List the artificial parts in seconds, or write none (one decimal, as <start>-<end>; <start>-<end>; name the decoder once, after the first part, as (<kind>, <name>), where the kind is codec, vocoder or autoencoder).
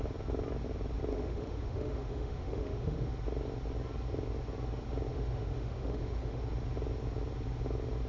1.1-3.1 (autoencoder, DAC-VAE); 5.1-6.4